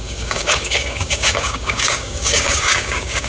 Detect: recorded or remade remade